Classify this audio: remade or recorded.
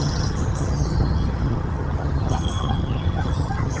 remade